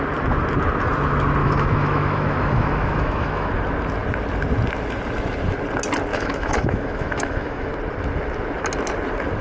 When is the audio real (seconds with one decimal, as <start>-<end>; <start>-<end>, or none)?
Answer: 0.0-1.4; 3.5-6.1; 7.7-9.4